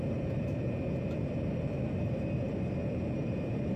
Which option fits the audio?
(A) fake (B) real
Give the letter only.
B